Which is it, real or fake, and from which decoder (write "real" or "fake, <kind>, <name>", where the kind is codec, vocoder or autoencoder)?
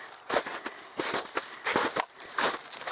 fake, vocoder, BigVGAN v2